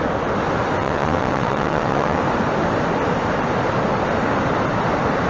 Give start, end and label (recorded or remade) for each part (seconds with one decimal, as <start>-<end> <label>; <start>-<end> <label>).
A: 0.0-0.8 recorded; 0.8-2.2 remade; 2.2-5.3 recorded

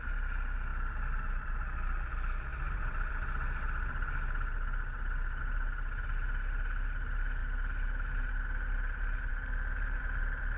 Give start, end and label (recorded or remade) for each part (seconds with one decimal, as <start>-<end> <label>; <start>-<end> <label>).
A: 0.0-10.6 recorded